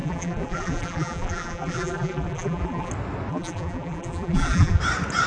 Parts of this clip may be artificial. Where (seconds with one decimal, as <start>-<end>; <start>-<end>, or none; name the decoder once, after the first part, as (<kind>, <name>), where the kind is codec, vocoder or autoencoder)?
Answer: 0.0-2.9 (vocoder, BigVGAN v2); 3.3-4.8